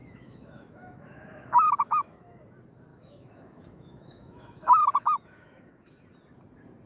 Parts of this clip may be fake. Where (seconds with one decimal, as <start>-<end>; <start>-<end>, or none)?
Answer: 0.0-2.4; 2.9-6.0